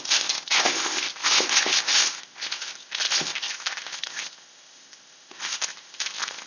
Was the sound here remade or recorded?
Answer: remade